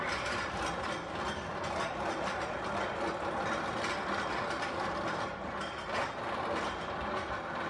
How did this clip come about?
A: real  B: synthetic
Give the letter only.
A